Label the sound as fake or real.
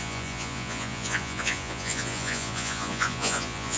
fake